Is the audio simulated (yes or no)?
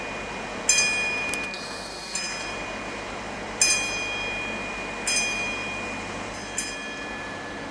no